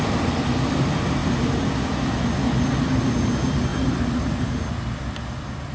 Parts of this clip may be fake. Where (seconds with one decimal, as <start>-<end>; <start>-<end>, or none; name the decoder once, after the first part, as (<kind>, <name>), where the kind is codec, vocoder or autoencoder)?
none